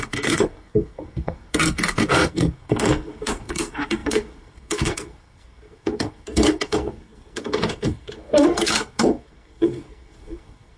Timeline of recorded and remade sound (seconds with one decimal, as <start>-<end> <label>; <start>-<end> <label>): 0.0-10.8 remade